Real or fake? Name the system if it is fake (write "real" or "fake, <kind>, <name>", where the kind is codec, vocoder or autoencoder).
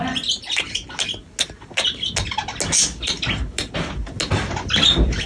real